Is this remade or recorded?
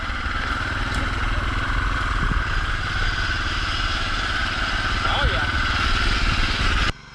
recorded